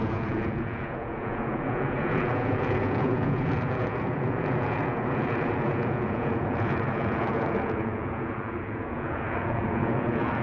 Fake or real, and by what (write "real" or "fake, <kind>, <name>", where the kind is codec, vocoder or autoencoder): fake, vocoder, Vocos